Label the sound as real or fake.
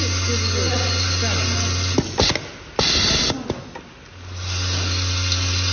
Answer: real